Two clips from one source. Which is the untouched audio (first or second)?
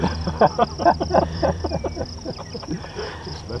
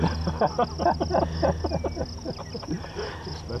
second